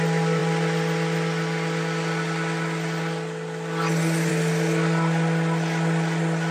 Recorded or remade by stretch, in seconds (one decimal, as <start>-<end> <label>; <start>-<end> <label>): 0.0-6.5 recorded